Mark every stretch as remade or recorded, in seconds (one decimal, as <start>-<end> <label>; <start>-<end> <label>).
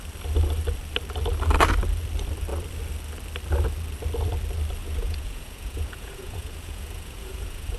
0.0-4.8 recorded; 4.8-7.8 remade